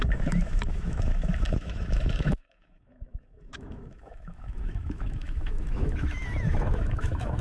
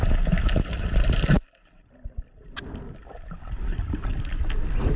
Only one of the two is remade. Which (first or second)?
first